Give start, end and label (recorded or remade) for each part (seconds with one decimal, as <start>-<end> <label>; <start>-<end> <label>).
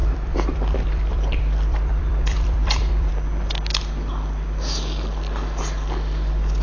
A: 0.0-3.1 remade; 3.1-6.6 recorded